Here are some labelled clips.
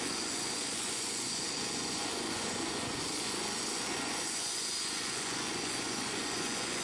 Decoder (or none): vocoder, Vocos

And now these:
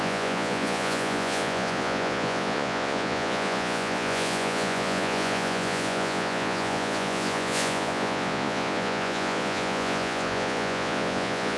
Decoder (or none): vocoder, Vocos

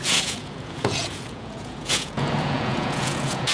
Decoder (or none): vocoder, Vocos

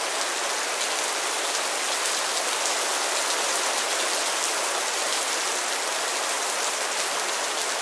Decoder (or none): none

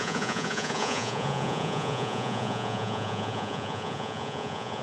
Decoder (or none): vocoder, Vocos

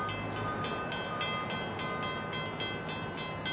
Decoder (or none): none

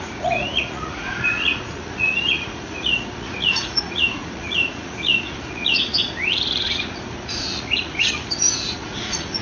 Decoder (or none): vocoder, Vocos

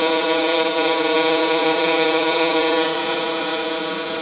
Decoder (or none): vocoder, Vocos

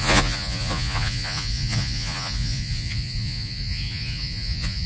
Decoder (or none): vocoder, Vocos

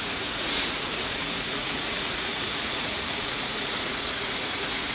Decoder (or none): vocoder, Vocos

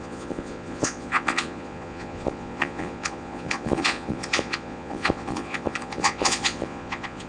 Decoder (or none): vocoder, Vocos